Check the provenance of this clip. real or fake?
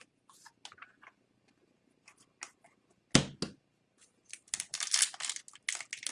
real